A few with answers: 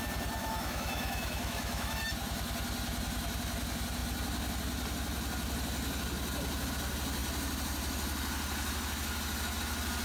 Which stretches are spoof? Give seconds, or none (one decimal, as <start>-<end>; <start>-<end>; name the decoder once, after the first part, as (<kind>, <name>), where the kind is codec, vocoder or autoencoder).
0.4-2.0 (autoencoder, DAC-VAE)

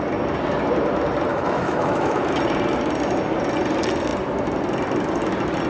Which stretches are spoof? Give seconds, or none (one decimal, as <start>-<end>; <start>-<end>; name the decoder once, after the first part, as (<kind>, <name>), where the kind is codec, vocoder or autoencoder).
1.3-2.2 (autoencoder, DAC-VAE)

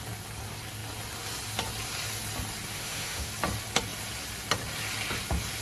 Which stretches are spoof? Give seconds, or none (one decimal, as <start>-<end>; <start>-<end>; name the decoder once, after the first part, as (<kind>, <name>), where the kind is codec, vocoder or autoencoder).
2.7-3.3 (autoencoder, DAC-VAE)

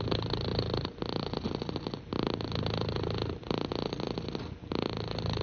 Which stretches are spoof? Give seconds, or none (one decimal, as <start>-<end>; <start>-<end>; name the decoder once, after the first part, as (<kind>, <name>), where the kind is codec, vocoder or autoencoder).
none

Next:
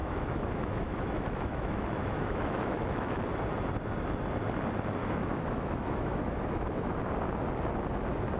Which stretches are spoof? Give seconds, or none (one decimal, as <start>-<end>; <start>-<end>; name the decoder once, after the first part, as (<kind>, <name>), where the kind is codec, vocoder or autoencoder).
0.0-3.2 (autoencoder, DAC-VAE); 5.0-6.9